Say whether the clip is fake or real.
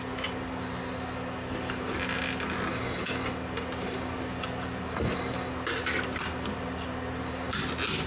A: real